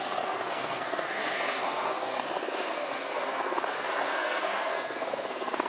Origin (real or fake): fake